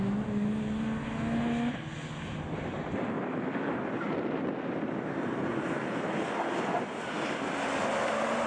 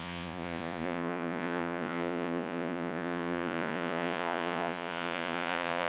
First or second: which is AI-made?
second